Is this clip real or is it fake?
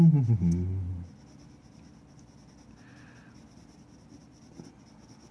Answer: real